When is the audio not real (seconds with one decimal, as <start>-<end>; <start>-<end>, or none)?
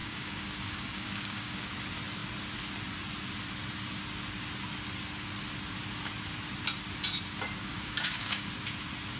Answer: 0.0-1.7; 7.6-8.5